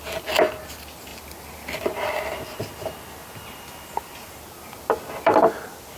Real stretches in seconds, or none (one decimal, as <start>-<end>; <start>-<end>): 0.0-6.0